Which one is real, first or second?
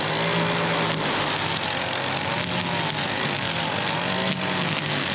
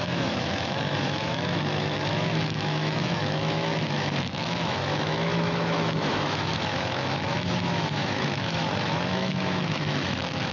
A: first